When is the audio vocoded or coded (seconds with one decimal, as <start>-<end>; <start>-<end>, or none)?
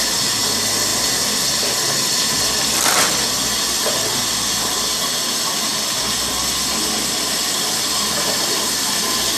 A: none